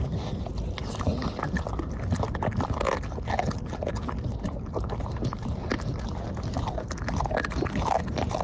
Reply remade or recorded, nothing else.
recorded